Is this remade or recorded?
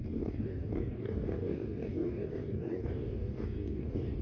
remade